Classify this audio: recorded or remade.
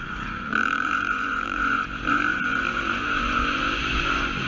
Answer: remade